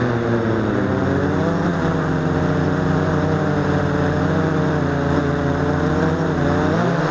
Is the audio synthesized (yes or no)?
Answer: no